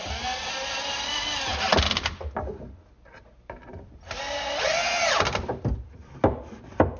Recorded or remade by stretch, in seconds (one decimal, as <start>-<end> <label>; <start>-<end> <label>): 0.0-7.0 recorded